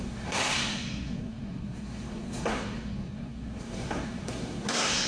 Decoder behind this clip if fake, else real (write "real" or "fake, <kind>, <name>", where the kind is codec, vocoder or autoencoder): fake, codec, SNAC